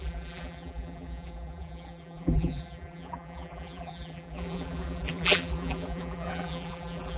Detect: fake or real fake